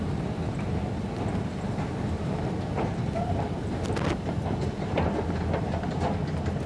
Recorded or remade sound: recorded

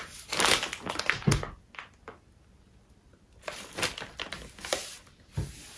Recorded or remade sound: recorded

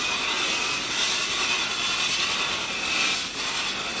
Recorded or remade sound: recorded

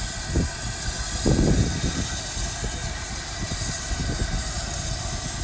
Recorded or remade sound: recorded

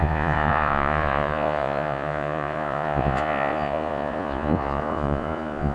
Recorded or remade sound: remade